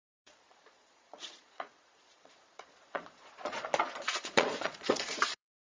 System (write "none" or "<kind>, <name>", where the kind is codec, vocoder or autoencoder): vocoder, Vocos